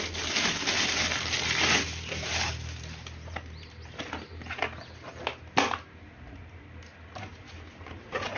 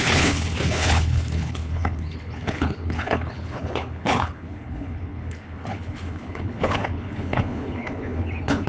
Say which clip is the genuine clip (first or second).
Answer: first